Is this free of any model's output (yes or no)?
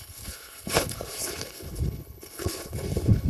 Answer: no